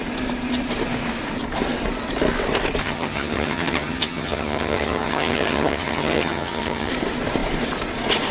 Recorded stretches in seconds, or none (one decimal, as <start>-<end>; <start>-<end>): 0.0-2.8; 6.9-8.3